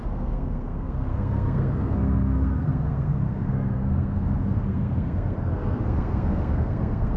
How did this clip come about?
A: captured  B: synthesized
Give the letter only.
B